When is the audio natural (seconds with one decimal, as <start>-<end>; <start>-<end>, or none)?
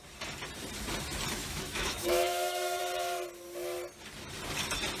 0.0-1.4; 2.8-5.0